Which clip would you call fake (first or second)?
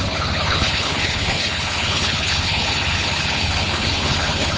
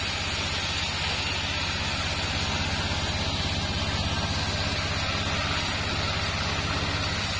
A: first